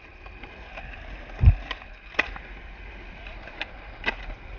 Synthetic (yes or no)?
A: no